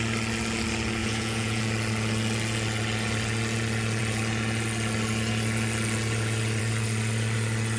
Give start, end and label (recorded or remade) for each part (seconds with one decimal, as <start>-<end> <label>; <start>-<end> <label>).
0.0-1.0 recorded; 1.0-1.6 remade; 1.6-7.8 recorded